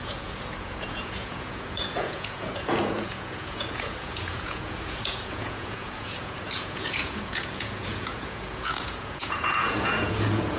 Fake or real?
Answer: fake